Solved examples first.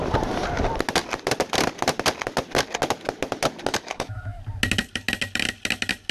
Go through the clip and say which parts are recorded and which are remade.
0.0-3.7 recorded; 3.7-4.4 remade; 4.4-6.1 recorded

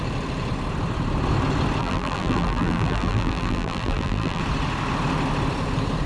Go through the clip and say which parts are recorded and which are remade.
0.0-1.8 recorded; 1.8-4.4 remade; 4.4-6.1 recorded

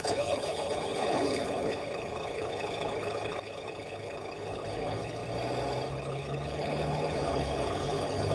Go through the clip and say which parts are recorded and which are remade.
0.0-5.2 remade; 5.2-5.9 recorded; 5.9-8.3 remade

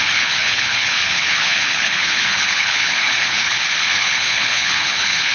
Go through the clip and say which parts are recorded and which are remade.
0.0-5.3 remade

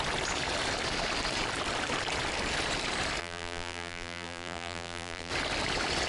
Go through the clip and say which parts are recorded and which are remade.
0.0-3.2 recorded; 3.2-5.3 remade; 5.3-6.1 recorded

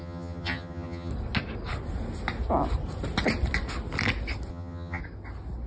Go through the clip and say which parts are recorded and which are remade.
0.0-1.1 remade; 1.1-4.5 recorded; 4.5-5.0 remade; 5.0-5.7 recorded

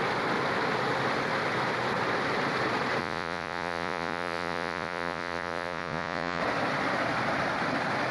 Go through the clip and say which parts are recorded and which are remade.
0.0-3.0 recorded; 3.0-6.4 remade; 6.4-8.1 recorded

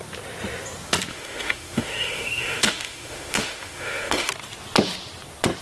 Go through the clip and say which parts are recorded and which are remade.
0.0-1.1 recorded; 1.1-4.3 remade; 4.3-5.6 recorded